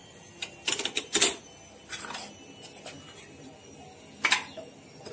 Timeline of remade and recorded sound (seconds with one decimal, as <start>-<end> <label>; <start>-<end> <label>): 0.0-5.1 recorded